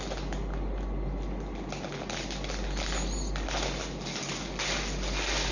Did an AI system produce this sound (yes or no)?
no